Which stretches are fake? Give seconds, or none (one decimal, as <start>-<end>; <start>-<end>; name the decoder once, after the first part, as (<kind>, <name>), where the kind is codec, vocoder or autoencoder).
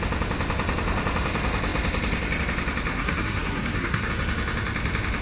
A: 2.9-4.1 (codec, SNAC)